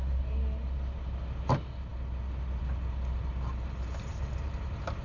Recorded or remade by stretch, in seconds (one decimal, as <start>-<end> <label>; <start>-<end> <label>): 0.0-4.1 recorded; 4.1-5.0 remade